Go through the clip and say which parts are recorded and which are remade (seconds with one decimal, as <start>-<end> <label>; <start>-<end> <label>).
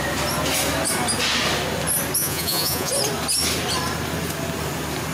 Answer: 0.0-2.2 recorded; 2.2-2.9 remade; 2.9-5.1 recorded